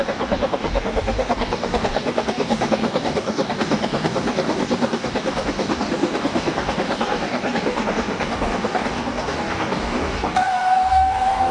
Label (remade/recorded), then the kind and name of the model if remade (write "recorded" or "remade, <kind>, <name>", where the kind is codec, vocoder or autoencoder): remade, codec, DAC